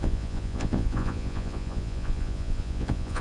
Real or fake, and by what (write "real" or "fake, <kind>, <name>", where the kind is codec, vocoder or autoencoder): fake, vocoder, Vocos